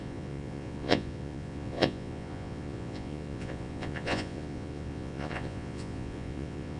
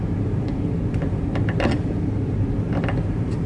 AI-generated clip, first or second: first